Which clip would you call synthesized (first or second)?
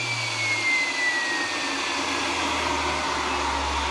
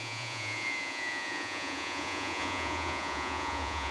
second